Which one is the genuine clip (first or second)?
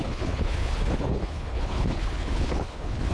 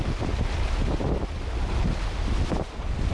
second